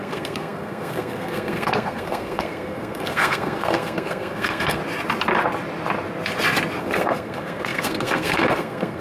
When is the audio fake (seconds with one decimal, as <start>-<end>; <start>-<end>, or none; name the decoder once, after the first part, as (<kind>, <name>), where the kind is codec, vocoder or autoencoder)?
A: 0.0-4.8 (codec, SNAC); 6.8-9.0